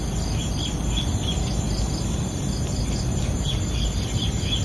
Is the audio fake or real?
real